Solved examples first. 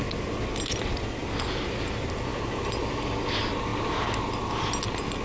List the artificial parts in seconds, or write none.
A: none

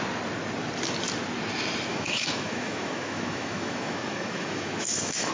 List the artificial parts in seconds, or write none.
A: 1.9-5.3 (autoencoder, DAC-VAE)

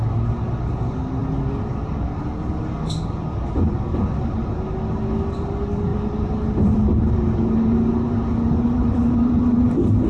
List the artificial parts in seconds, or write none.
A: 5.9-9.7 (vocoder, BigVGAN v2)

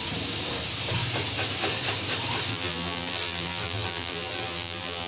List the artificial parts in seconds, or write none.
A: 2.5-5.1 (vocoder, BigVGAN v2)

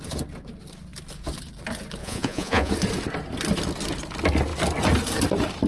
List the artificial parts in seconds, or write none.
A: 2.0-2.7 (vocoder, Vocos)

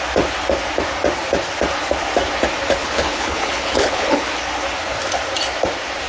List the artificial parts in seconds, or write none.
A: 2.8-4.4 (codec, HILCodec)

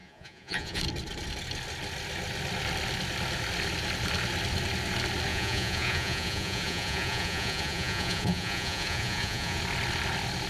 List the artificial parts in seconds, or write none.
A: 0.0-0.8 (vocoder, Vocos); 5.3-9.6

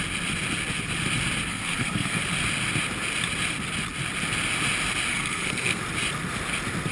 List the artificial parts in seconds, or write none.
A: 1.5-2.2 (codec, SNAC); 5.1-5.8